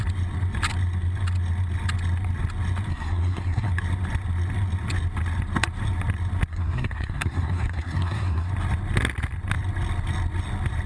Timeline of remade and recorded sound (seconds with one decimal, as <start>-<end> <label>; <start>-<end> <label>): 0.0-2.9 recorded; 2.9-3.7 remade; 3.7-6.5 recorded; 6.5-8.5 remade; 8.5-10.9 recorded